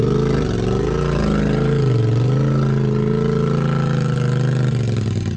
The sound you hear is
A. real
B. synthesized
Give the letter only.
A